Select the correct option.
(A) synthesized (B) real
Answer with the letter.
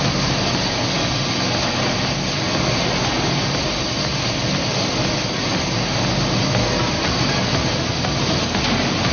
B